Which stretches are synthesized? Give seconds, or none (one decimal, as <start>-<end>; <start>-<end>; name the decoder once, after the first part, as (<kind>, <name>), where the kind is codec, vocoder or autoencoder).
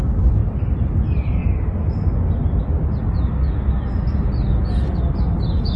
0.0-1.4 (vocoder, BigVGAN v2); 4.9-5.8